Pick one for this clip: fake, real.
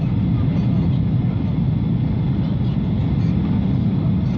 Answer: real